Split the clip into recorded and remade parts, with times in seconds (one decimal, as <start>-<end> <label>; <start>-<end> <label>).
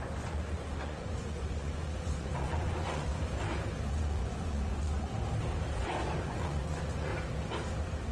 0.0-3.1 remade; 3.1-3.9 recorded; 3.9-5.1 remade; 5.1-5.8 recorded; 5.8-7.1 remade; 7.1-8.1 recorded